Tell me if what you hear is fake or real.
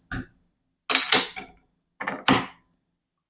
real